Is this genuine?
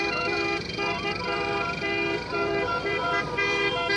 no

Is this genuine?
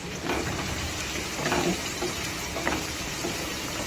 no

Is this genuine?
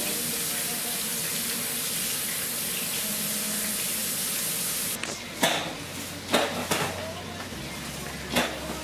yes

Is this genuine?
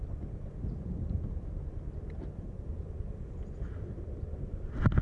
yes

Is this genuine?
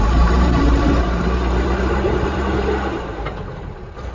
no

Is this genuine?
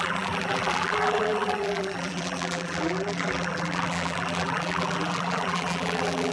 no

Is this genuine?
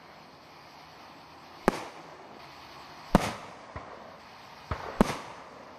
yes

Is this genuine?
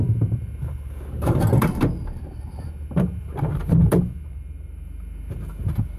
no